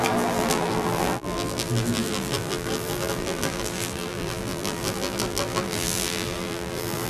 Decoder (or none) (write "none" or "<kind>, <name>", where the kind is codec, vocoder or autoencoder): vocoder, BigVGAN v2